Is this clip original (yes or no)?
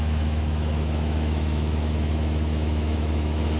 no